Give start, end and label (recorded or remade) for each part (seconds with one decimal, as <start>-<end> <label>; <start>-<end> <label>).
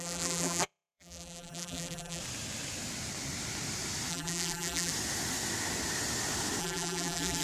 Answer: 0.0-2.2 remade; 2.2-4.1 recorded; 4.1-4.9 remade; 4.9-6.6 recorded; 6.6-7.4 remade